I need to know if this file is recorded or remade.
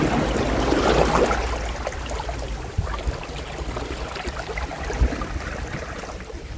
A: recorded